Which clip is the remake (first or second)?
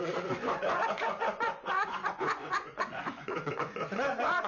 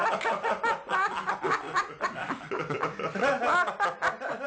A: first